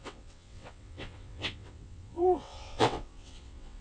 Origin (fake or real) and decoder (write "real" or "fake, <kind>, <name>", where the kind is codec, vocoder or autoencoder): fake, vocoder, WaveNeXt